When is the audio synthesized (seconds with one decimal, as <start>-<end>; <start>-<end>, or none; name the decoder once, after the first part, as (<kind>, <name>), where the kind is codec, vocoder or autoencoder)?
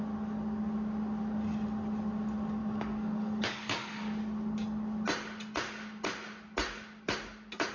2.6-4.0 (codec, DAC)